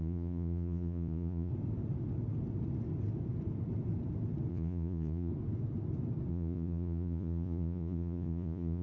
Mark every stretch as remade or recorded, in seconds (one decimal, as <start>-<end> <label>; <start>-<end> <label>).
0.0-1.5 remade; 1.5-4.5 recorded; 4.5-5.3 remade; 5.3-6.3 recorded; 6.3-8.8 remade